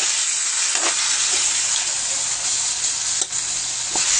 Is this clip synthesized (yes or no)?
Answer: no